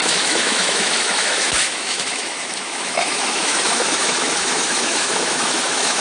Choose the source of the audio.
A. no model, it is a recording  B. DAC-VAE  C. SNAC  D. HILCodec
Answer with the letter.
B